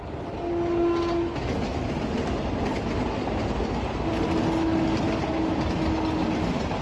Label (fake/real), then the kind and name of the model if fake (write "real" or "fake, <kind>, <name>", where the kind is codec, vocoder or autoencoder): real